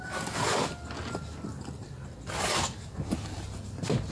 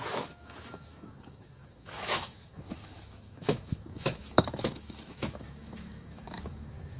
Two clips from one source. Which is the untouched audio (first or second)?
first